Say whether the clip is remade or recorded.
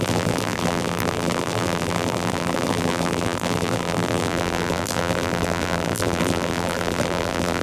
remade